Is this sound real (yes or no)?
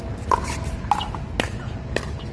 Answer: yes